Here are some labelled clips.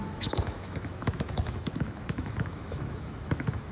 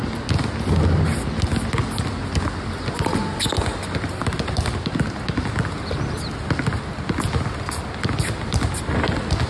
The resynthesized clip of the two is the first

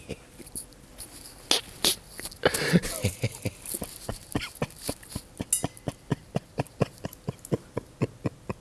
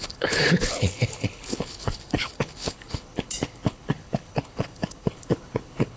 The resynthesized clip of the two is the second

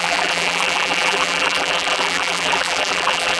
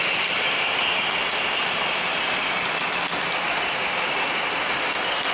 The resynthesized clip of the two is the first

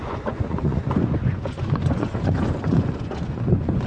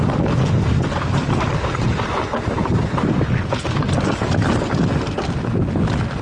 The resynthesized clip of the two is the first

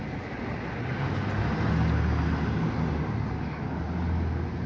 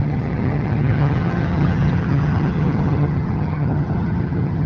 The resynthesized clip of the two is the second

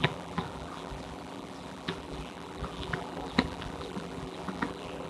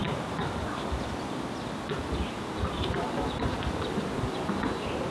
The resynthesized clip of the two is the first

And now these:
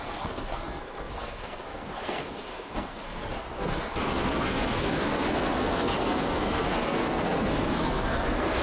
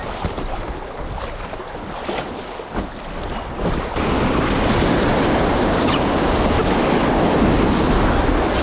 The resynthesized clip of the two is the first